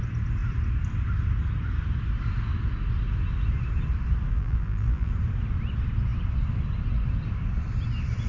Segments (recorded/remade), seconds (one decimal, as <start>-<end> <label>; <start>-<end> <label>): 0.0-4.3 recorded; 4.3-5.1 remade; 5.1-8.3 recorded